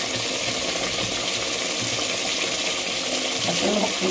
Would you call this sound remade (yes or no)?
no